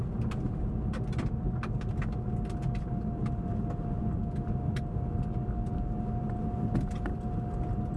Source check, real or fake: real